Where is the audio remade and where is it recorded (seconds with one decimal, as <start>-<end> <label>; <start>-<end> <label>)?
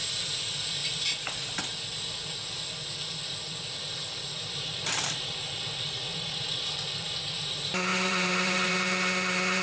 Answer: 0.0-0.8 remade; 0.8-3.8 recorded; 3.8-9.6 remade